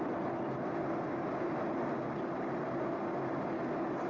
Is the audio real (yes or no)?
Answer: yes